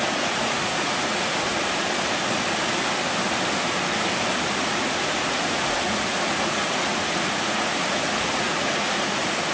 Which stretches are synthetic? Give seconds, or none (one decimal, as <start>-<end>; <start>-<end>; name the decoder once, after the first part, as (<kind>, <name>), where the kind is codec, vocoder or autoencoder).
0.0-1.5 (vocoder, Vocos); 4.6-9.5